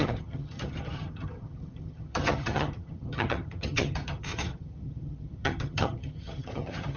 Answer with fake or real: fake